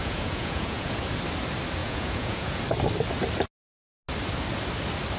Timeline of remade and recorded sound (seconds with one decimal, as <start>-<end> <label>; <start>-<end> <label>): 0.0-1.0 remade; 1.0-1.8 recorded; 1.8-2.6 remade; 2.6-5.2 recorded